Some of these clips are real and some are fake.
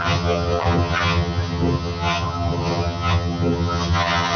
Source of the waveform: fake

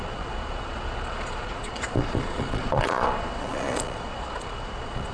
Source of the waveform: fake